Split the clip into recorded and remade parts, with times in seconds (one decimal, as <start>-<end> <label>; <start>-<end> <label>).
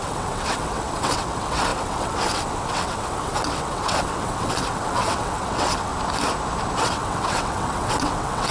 0.0-5.9 remade; 5.9-6.8 recorded; 6.8-8.5 remade